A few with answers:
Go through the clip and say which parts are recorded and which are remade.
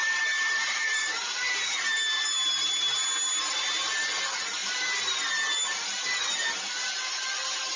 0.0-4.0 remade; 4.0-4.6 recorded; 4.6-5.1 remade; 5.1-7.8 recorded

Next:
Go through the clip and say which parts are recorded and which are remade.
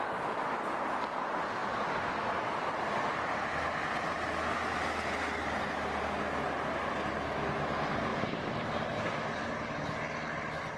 0.0-8.1 recorded; 8.1-9.0 remade; 9.0-10.8 recorded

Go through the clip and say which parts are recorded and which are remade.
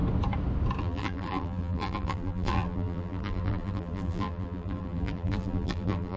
0.0-0.8 recorded; 0.8-6.2 remade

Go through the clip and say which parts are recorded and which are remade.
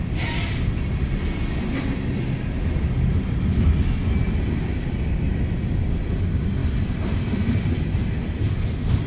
0.0-6.6 recorded; 6.6-7.2 remade; 7.2-9.1 recorded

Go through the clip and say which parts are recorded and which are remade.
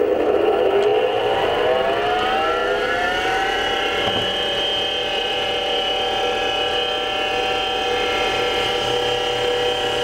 0.0-2.6 recorded; 2.6-5.9 remade; 5.9-10.0 recorded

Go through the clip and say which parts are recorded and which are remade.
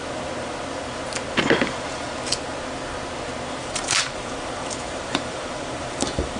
0.0-3.6 recorded; 3.6-6.4 remade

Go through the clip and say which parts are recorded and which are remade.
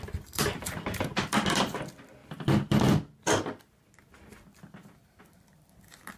0.0-6.2 recorded